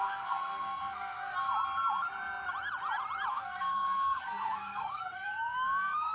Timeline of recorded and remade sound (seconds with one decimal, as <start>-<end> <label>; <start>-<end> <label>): 0.0-1.5 remade; 1.5-3.3 recorded; 3.3-6.1 remade